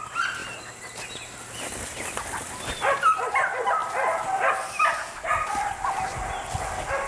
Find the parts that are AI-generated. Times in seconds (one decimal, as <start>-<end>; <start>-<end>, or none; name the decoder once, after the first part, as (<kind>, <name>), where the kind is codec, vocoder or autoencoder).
none